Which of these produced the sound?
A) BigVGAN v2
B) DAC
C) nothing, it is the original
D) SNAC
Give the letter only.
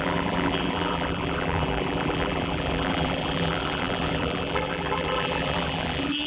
A